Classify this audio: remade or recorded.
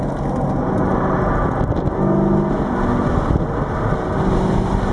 recorded